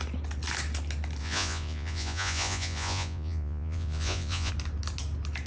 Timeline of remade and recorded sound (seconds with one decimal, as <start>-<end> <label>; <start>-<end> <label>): 0.0-1.2 recorded; 1.2-4.5 remade; 4.5-5.5 recorded